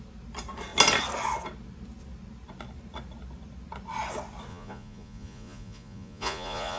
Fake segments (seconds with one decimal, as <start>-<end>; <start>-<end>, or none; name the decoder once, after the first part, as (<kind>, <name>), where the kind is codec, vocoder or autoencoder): 4.5-6.8 (vocoder, Vocos)